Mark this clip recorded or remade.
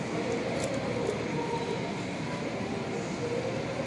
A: recorded